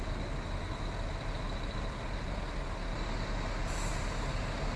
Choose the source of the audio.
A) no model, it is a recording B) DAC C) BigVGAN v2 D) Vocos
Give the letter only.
A